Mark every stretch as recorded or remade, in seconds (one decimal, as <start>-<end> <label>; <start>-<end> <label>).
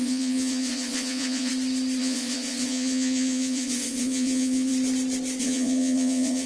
0.0-1.5 remade; 1.5-2.0 recorded; 2.0-4.7 remade; 4.7-5.4 recorded; 5.4-6.5 remade